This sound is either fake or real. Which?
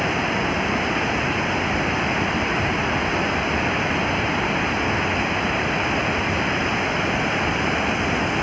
real